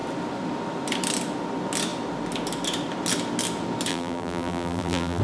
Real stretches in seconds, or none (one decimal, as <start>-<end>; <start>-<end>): 0.0-3.9